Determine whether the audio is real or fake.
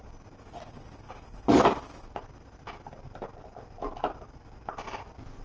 real